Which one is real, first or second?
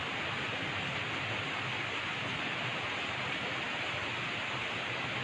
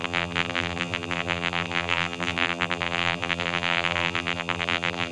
first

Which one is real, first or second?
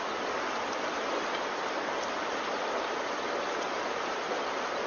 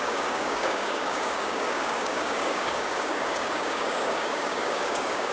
first